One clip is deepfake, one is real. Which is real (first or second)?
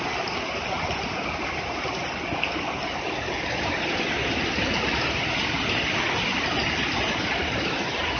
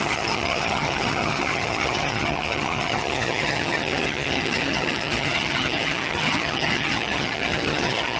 first